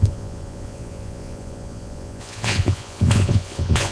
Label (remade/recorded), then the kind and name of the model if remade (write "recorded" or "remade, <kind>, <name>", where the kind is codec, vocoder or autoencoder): remade, vocoder, Vocos